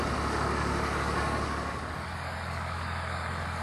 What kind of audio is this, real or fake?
fake